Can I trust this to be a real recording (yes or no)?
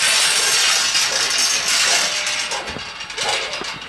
yes